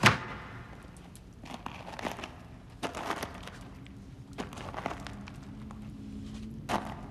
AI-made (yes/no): no